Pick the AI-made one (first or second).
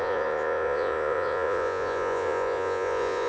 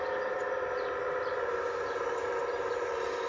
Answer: first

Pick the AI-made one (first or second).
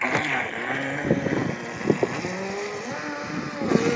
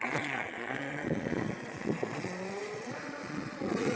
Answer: second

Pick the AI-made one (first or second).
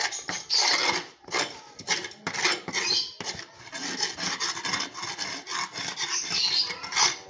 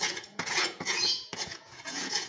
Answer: second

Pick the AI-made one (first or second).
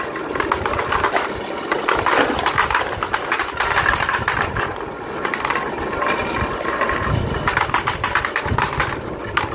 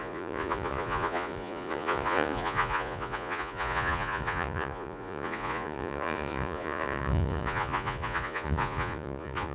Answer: second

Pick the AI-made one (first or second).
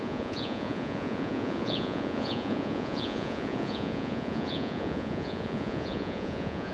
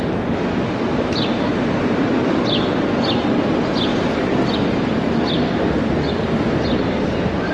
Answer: first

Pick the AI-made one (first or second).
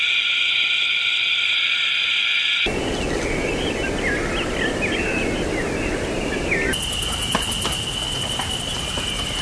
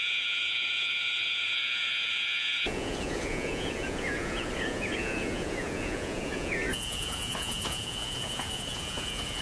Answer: second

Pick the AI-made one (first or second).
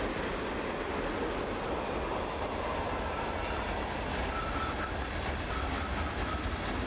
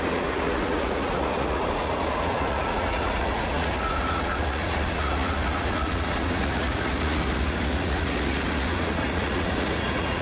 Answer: second